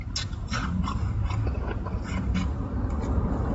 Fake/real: real